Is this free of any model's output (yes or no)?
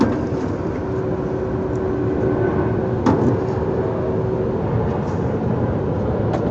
yes